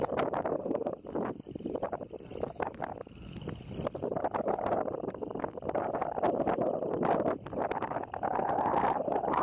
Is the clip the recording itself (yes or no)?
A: yes